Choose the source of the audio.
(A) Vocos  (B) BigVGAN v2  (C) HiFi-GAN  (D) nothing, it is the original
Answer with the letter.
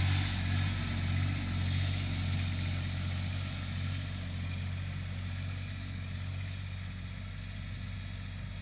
D